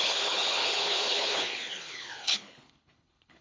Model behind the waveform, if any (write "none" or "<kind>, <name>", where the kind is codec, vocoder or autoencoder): codec, HILCodec